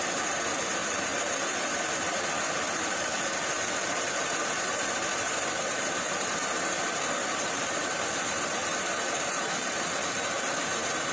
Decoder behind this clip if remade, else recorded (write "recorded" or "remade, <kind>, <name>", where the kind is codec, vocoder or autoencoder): remade, vocoder, BigVGAN v2